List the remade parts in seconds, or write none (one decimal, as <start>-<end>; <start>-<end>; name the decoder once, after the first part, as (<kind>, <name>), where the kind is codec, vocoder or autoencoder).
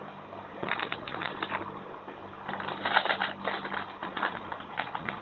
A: 0.5-1.3 (vocoder, Vocos); 4.0-5.2